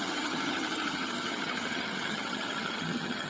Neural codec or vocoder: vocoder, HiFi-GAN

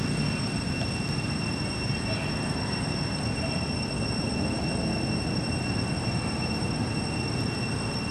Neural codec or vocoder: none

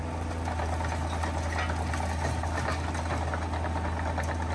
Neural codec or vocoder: none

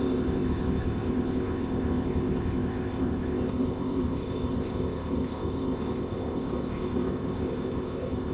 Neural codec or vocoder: codec, ZipCodec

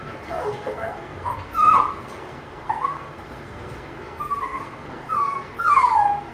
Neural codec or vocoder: codec, SNAC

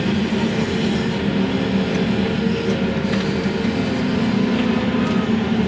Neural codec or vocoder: none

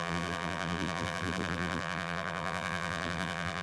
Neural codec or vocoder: vocoder, BigVGAN v2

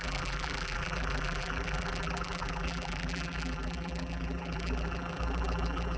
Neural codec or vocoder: vocoder, BigVGAN v2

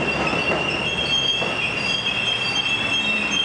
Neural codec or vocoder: none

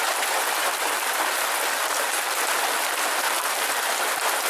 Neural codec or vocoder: none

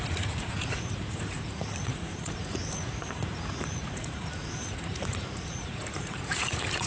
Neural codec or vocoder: vocoder, Vocos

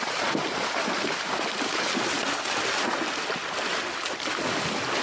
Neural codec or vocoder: none